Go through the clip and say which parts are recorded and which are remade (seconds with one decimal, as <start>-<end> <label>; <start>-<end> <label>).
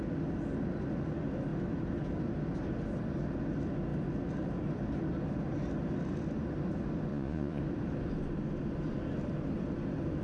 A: 0.0-7.1 recorded; 7.1-7.6 remade; 7.6-10.2 recorded